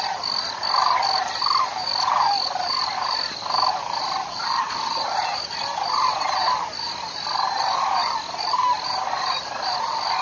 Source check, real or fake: real